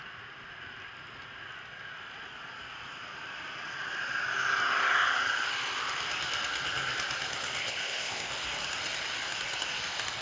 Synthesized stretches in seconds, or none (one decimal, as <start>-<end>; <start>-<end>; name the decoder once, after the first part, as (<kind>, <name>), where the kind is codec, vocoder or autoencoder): 7.6-8.3 (codec, ZipCodec)